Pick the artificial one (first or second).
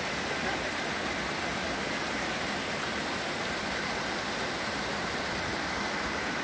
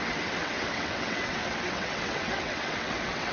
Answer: second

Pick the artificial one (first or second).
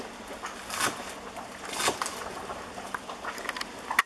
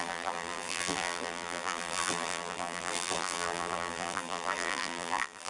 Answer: second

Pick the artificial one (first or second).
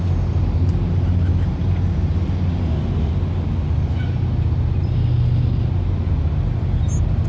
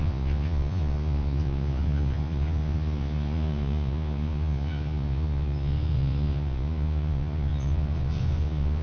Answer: second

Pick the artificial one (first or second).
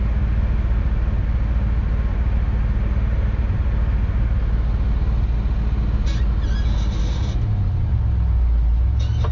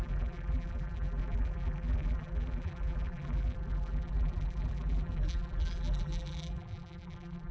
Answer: second